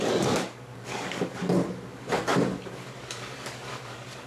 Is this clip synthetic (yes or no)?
yes